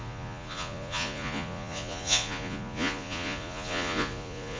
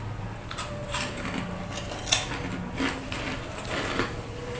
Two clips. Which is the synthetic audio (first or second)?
first